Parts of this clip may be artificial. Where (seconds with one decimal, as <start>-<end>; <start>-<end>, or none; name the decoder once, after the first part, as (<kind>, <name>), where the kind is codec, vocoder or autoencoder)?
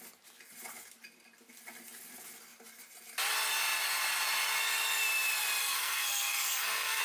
5.6-7.0 (codec, SNAC)